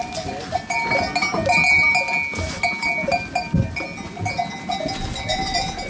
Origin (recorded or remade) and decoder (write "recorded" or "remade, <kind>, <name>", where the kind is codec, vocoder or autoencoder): recorded